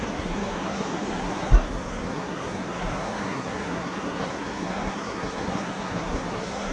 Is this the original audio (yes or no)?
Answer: no